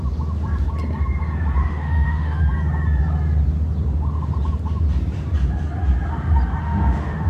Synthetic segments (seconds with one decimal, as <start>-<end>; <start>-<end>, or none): 1.6-2.4; 6.6-7.3